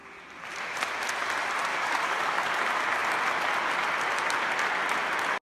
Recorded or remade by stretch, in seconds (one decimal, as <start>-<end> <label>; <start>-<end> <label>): 0.0-1.7 recorded; 1.7-2.6 remade; 2.6-5.5 recorded